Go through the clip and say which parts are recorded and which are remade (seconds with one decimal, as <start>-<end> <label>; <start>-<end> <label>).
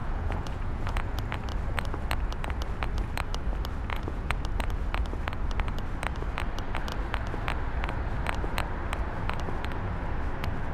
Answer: 0.0-1.1 remade; 1.1-3.9 recorded; 3.9-4.4 remade; 4.4-10.7 recorded